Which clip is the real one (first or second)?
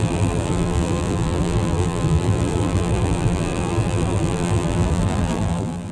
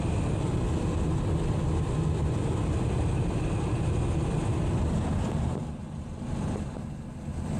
second